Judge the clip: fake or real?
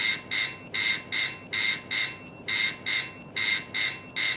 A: real